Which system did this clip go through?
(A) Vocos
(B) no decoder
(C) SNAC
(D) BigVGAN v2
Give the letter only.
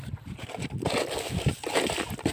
B